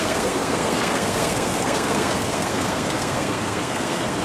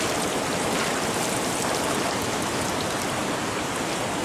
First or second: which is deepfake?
first